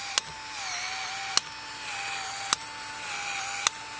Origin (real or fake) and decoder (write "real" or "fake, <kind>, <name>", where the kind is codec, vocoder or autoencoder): real